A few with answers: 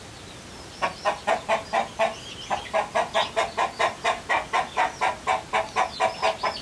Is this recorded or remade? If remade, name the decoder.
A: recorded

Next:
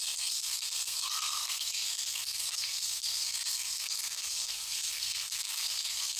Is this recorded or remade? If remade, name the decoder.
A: remade, codec, SNAC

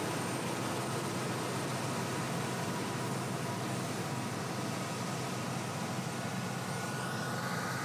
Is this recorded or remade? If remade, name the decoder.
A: recorded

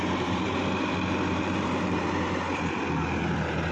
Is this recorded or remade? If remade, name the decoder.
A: remade, vocoder, BigVGAN v2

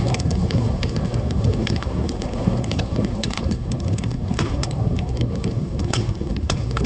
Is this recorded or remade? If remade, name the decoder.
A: remade, codec, SNAC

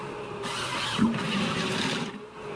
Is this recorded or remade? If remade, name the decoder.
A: recorded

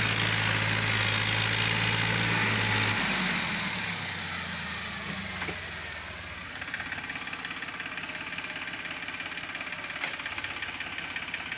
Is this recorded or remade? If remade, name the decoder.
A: recorded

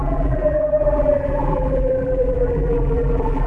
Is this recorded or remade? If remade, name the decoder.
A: remade, vocoder, BigVGAN v2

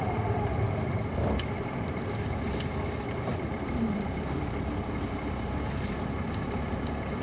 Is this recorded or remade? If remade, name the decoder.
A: remade, vocoder, BigVGAN v2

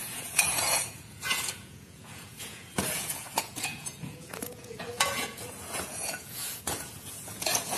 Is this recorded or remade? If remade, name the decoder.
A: remade, vocoder, Vocos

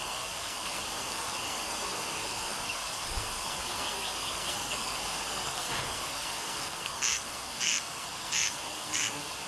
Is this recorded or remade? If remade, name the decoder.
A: remade, codec, SNAC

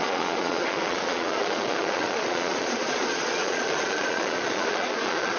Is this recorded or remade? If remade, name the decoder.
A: remade, vocoder, Vocos